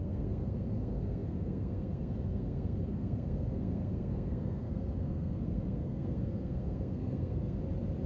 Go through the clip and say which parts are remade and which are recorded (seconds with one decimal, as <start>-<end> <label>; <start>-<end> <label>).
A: 0.0-7.6 remade; 7.6-8.1 recorded